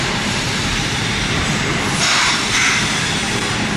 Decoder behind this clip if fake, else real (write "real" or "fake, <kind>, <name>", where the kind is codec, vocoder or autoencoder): fake, vocoder, BigVGAN v2